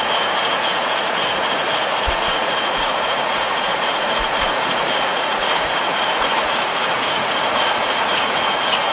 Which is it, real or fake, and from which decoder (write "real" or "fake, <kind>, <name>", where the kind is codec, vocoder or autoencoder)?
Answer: fake, vocoder, Vocos